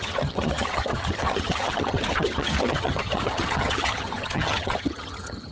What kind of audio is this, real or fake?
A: fake